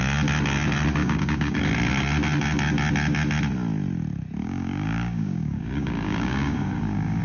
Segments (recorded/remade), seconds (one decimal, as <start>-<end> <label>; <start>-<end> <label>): 0.0-1.0 recorded; 1.0-1.6 remade; 1.6-4.4 recorded; 4.4-7.2 remade